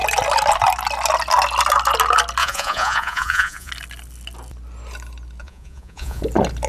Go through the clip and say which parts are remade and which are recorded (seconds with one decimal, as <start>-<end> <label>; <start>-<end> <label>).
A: 0.0-2.4 recorded; 2.4-3.7 remade; 3.7-5.4 recorded; 5.4-6.2 remade; 6.2-6.7 recorded